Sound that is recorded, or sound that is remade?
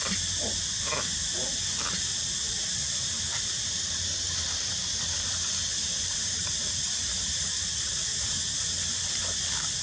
recorded